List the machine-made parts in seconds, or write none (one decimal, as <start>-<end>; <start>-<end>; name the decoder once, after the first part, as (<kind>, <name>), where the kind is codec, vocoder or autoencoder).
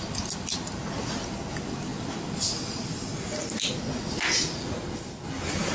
none